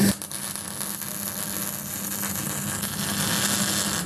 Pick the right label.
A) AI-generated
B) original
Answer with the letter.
B